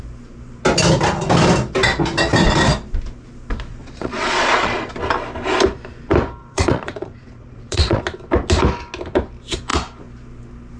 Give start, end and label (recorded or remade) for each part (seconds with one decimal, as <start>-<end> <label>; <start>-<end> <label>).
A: 0.0-3.7 recorded; 3.7-4.9 remade; 4.9-6.4 recorded; 6.4-8.0 remade; 8.0-10.8 recorded